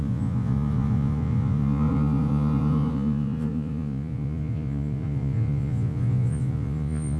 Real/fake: fake